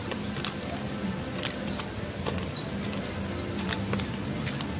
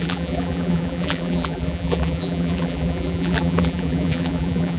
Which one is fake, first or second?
second